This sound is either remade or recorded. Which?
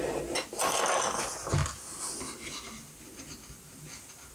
recorded